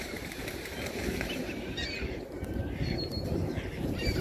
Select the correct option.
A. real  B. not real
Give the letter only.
B